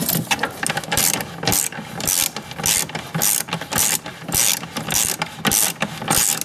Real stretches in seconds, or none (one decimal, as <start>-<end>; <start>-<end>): 0.0-6.4

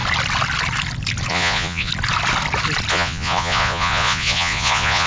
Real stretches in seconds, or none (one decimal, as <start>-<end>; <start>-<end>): 0.0-1.3; 1.9-2.9

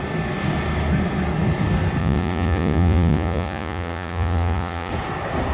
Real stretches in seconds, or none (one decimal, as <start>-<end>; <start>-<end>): 0.0-2.0; 4.9-5.5

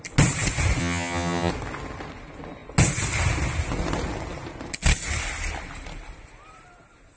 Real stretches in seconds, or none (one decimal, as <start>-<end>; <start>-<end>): 0.0-0.8; 1.5-7.2

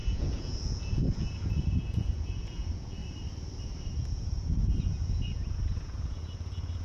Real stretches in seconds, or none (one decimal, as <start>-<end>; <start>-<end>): 3.0-3.9

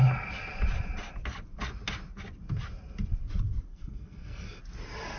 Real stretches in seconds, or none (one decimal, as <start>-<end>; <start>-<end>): 0.0-3.7; 4.6-5.2